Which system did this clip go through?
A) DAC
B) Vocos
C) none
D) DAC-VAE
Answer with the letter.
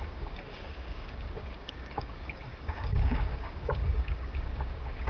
A